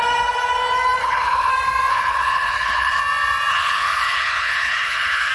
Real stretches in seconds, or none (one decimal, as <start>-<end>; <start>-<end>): 0.0-1.0; 1.5-1.9; 3.0-3.5